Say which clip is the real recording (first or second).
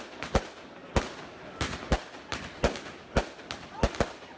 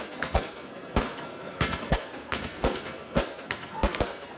first